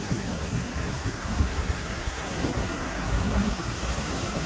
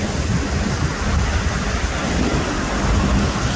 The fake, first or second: first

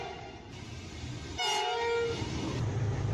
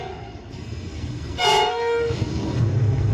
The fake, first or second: second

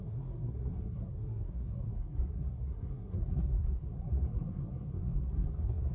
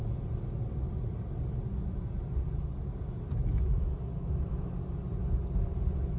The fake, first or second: first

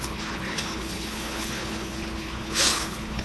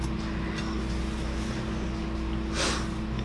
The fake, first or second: first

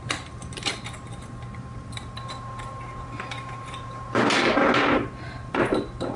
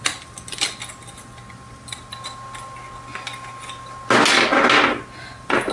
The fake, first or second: first